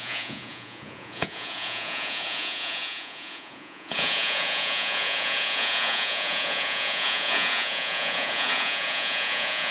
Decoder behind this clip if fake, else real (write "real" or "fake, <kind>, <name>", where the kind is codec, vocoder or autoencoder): fake, vocoder, Vocos